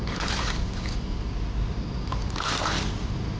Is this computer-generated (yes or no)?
no